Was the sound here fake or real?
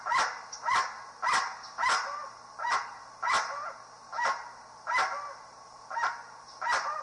real